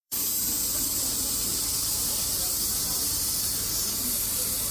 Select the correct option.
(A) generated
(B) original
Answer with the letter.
A